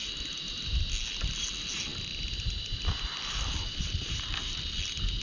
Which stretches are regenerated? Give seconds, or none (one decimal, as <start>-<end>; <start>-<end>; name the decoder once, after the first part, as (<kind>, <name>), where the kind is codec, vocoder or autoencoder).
0.0-0.8 (vocoder, BigVGAN v2); 1.9-4.6